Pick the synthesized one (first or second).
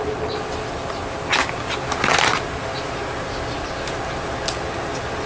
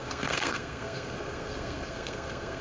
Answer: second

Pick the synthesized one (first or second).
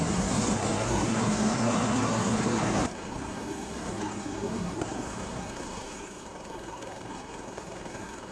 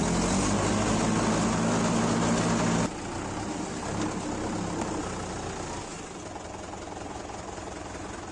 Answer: first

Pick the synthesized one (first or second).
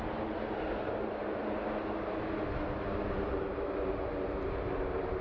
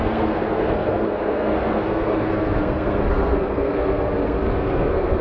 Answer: second